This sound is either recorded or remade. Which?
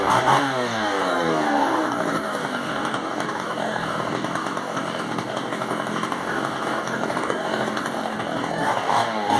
remade